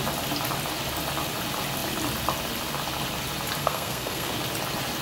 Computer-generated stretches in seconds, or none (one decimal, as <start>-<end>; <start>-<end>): 3.6-4.3